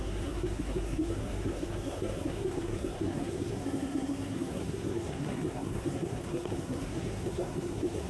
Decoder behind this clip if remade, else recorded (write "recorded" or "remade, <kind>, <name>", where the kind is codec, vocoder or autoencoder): remade, codec, SNAC